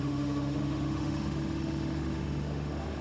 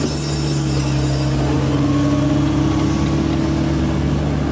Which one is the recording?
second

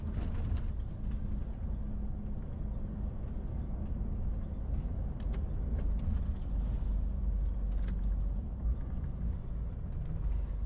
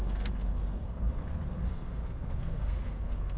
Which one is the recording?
first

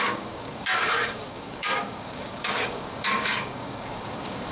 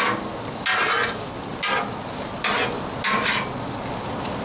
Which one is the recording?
second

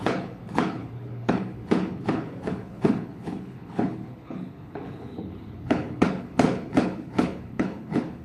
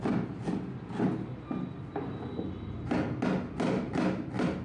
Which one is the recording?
second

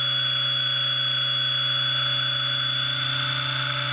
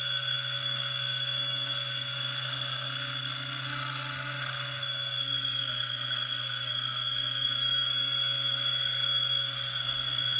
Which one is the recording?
first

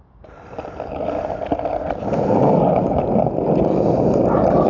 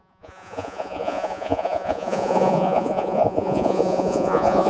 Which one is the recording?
first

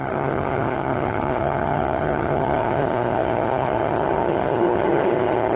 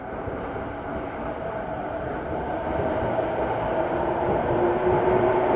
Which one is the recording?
second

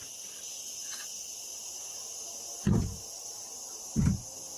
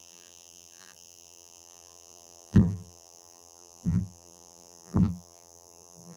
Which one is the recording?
first